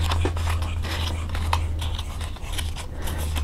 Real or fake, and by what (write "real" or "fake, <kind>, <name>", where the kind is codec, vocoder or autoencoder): real